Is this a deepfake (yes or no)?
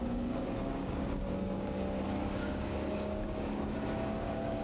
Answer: yes